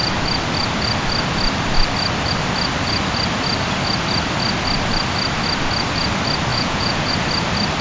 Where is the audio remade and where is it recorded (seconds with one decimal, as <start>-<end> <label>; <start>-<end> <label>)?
0.0-6.5 recorded; 6.5-7.1 remade; 7.1-7.8 recorded